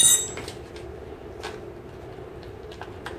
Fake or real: real